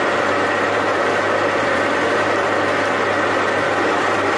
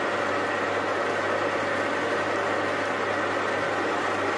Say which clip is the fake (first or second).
first